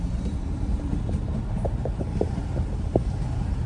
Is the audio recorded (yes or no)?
no